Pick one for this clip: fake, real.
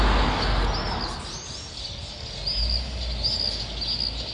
real